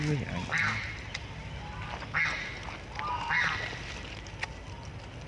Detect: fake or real real